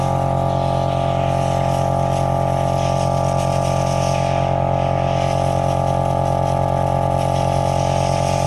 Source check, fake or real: real